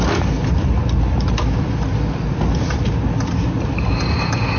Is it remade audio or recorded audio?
recorded